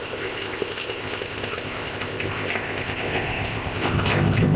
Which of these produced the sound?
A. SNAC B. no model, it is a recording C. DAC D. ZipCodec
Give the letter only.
D